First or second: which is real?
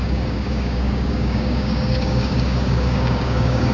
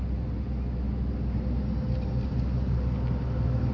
second